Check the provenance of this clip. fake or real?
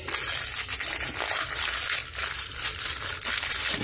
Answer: real